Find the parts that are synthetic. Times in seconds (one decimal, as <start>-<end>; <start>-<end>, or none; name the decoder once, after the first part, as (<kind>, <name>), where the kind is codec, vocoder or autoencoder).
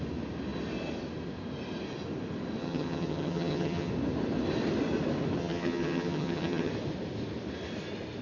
2.6-3.9 (vocoder, HiFi-GAN); 5.4-6.7